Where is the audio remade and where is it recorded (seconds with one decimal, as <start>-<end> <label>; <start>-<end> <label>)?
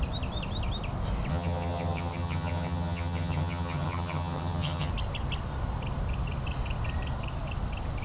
0.0-1.3 recorded; 1.3-4.9 remade; 4.9-8.0 recorded